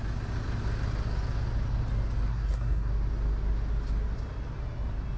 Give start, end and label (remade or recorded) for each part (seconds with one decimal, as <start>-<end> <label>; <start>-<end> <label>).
0.0-2.3 recorded; 2.3-2.9 remade; 2.9-5.2 recorded